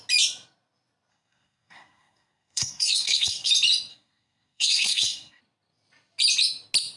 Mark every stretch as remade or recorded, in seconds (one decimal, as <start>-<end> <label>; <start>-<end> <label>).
0.0-1.1 recorded; 1.1-3.5 remade; 3.5-3.9 recorded; 3.9-5.4 remade; 5.4-7.0 recorded